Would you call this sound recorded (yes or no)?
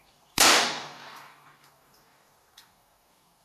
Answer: no